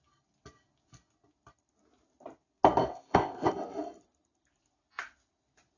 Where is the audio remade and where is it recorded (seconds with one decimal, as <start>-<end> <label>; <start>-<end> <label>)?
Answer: 0.0-2.9 recorded; 2.9-3.5 remade; 3.5-5.8 recorded

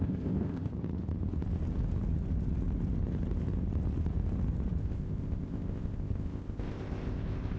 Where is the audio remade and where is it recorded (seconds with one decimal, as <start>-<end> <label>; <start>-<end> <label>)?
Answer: 0.0-0.7 remade; 0.7-4.8 recorded; 4.8-7.6 remade

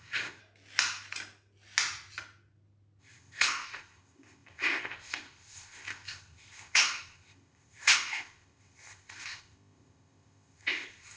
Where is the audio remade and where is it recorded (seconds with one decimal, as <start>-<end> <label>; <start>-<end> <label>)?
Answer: 0.0-0.4 remade; 0.4-3.0 recorded; 3.0-11.2 remade

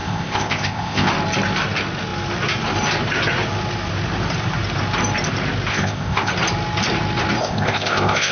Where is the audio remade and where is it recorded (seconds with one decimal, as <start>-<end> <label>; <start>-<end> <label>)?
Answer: 0.0-1.1 remade; 1.1-5.7 recorded; 5.7-6.3 remade; 6.3-7.4 recorded; 7.4-8.3 remade

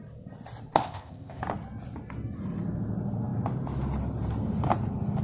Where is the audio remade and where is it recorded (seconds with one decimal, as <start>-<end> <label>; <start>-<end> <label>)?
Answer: 0.0-0.8 recorded; 0.8-1.4 remade; 1.4-5.2 recorded